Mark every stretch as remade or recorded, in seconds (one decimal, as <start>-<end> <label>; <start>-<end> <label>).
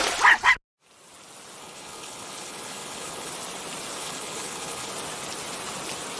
0.0-1.6 recorded; 1.6-3.3 remade; 3.3-4.0 recorded; 4.0-4.9 remade; 4.9-6.2 recorded